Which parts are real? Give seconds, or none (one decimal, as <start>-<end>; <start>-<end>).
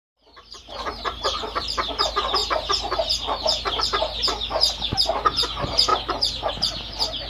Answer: 1.9-2.4; 3.8-5.9; 6.5-7.3